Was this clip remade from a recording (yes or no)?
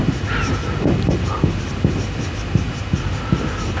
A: no